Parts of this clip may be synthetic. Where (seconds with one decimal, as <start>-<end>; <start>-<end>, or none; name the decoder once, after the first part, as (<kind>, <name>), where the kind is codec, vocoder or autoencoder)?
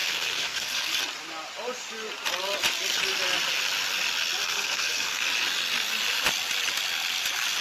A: 0.0-0.9 (codec, SNAC); 4.4-5.2